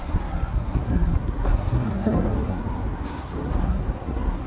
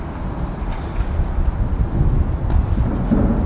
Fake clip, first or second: first